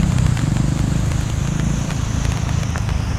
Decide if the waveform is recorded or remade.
recorded